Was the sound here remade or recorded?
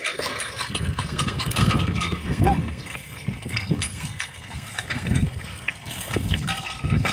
remade